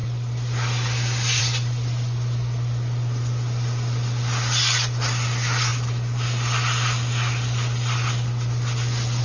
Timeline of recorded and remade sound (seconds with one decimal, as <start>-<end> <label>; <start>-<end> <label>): 0.0-9.2 recorded